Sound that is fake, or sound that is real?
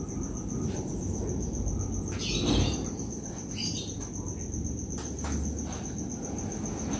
real